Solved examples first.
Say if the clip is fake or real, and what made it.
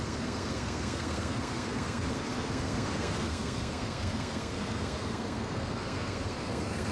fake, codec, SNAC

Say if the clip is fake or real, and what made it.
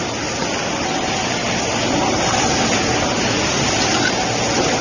real